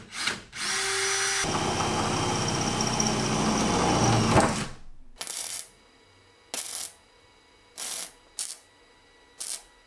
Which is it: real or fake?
real